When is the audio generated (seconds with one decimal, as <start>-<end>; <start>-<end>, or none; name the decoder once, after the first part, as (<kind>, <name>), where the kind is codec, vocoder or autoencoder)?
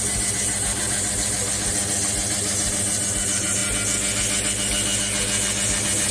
0.0-3.6 (vocoder, BigVGAN v2)